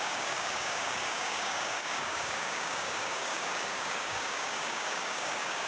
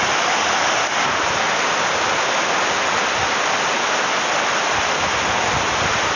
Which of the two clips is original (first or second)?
second